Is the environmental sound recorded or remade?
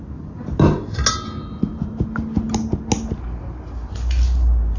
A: recorded